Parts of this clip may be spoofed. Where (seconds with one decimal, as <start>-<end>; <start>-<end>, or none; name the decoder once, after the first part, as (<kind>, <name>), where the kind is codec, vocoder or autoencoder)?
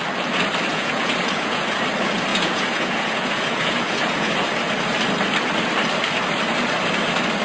0.7-1.8 (vocoder, Vocos); 2.3-4.3